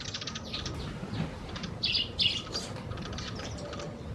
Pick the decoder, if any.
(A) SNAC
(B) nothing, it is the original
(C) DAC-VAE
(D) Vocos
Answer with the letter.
B